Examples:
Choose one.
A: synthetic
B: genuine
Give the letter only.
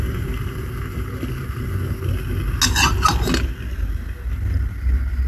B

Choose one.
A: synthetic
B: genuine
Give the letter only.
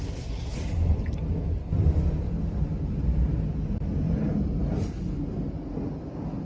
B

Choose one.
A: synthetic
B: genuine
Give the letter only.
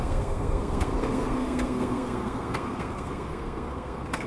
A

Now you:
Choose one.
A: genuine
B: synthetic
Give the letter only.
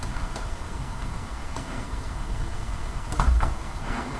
B